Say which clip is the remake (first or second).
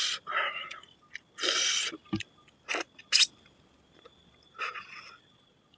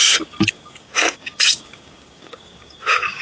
second